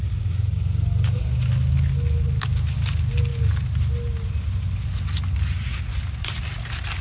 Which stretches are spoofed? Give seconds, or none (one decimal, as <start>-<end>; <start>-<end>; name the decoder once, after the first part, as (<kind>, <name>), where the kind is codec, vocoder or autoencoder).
none